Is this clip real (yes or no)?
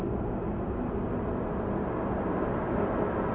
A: yes